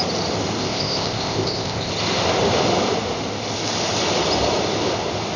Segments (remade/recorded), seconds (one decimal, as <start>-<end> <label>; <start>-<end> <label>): 0.0-0.6 recorded; 0.6-1.9 remade; 1.9-5.4 recorded